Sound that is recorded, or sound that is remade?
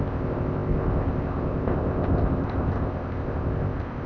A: remade